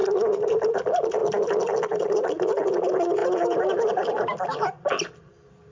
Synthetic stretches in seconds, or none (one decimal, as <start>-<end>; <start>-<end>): 0.0-0.7; 1.2-2.3